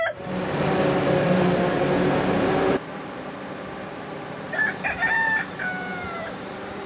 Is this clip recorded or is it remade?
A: remade